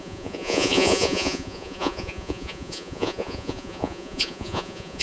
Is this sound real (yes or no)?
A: no